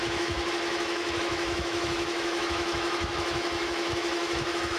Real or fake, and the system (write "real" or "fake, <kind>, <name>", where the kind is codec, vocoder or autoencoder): fake, autoencoder, DAC-VAE